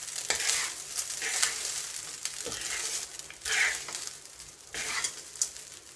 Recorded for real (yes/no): yes